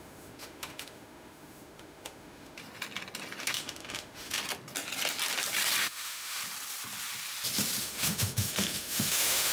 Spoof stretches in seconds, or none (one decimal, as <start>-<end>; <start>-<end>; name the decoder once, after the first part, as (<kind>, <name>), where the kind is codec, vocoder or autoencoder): 0.0-2.6 (autoencoder, DAC-VAE); 3.4-4.4; 5.8-6.4; 7.8-9.5